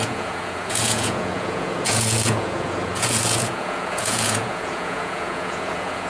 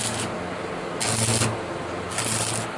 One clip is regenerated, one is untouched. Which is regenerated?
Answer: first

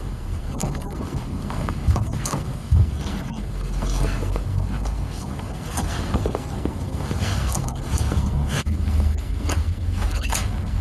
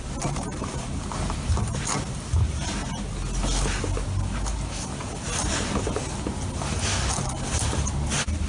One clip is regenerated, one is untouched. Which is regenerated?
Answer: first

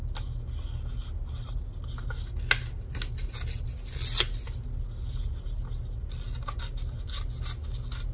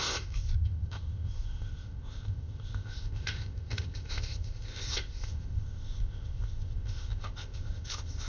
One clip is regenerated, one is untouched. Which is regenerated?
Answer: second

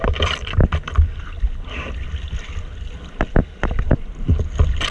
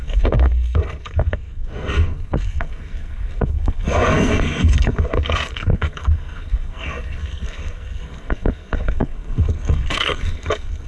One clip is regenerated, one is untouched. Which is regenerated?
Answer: second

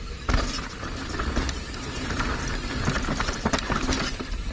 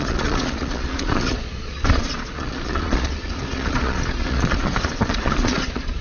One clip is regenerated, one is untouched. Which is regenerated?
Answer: second